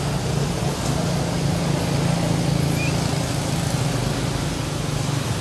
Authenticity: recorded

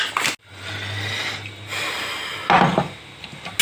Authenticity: recorded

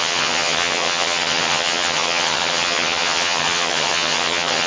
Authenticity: remade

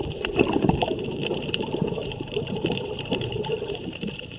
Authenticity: remade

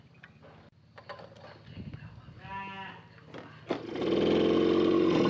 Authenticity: recorded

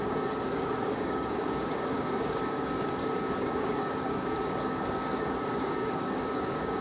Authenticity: remade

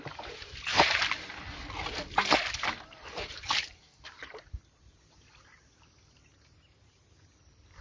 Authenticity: recorded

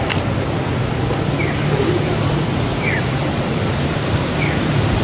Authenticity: remade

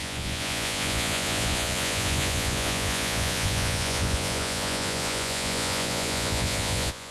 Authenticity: remade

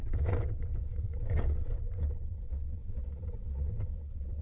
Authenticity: remade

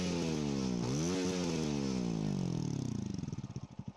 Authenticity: recorded